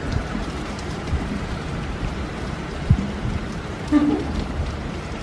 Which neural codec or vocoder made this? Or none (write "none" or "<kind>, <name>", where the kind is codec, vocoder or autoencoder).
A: vocoder, BigVGAN v2